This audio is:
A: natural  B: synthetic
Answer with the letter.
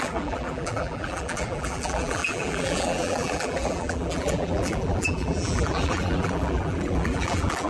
B